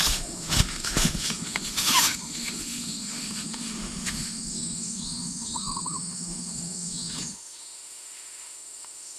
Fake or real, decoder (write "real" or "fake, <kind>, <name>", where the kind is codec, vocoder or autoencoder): fake, autoencoder, DAC-VAE